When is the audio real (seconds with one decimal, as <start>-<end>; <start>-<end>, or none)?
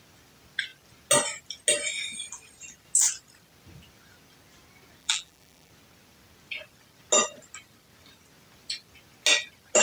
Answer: 0.0-5.0; 5.7-9.8